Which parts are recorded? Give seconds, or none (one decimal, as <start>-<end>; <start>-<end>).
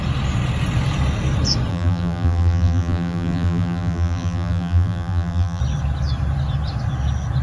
0.0-1.7; 5.6-7.4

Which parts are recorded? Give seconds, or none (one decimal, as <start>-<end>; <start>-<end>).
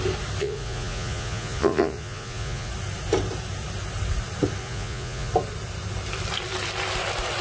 0.0-0.4; 2.7-4.6; 5.3-7.4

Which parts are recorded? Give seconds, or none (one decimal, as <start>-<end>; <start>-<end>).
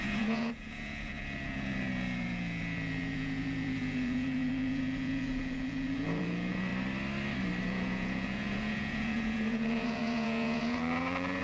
6.7-7.6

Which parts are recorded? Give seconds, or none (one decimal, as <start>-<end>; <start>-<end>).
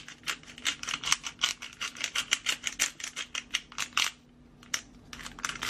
0.0-5.7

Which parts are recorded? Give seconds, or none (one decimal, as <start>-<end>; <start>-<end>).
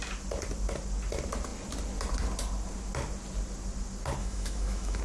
0.0-4.2